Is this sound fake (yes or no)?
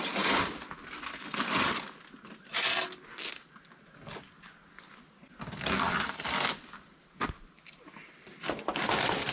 no